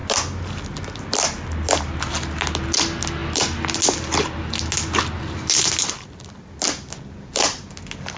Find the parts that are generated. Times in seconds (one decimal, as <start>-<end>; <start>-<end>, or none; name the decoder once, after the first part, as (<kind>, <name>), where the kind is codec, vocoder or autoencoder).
none

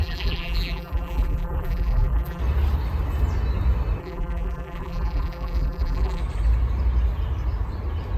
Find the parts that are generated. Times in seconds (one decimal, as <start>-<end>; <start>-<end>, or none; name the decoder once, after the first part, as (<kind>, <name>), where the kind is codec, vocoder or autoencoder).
0.0-2.4 (vocoder, BigVGAN v2); 4.0-6.2

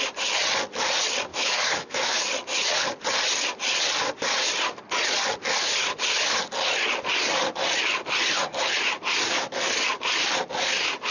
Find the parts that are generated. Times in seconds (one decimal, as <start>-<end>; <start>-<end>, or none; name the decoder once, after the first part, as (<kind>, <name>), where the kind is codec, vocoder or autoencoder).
1.3-2.2 (autoencoder, DAC-VAE)

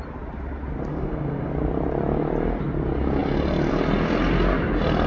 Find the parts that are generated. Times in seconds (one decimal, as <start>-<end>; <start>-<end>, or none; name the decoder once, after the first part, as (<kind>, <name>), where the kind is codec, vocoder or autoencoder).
0.9-1.5 (codec, SNAC)

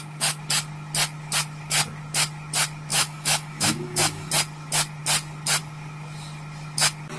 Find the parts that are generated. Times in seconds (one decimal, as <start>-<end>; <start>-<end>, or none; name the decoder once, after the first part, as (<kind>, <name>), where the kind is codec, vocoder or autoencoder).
2.9-4.3 (autoencoder, DAC-VAE)

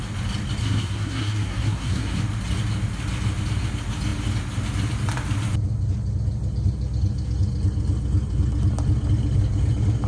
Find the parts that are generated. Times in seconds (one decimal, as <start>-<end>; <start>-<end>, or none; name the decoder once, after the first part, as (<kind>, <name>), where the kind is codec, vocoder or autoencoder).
0.6-2.2 (codec, SNAC)